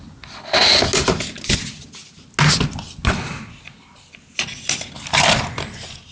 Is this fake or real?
real